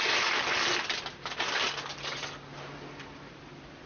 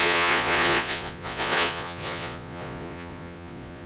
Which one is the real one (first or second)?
first